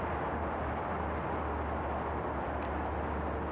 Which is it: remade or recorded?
recorded